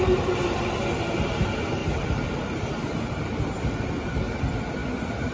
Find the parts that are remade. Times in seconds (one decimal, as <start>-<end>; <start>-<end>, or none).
1.8-3.2